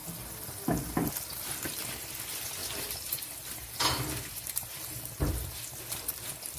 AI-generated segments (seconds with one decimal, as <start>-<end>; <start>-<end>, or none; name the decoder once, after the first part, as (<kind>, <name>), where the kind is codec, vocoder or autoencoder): 2.6-5.6 (vocoder, BigVGAN v2)